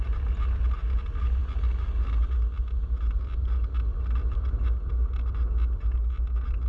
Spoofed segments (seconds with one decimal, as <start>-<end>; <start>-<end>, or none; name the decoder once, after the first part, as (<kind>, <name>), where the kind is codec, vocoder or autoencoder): none